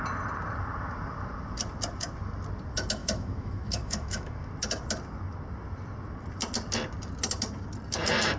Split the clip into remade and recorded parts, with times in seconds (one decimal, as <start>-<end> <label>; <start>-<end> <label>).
0.0-3.0 recorded; 3.0-4.5 remade; 4.5-8.4 recorded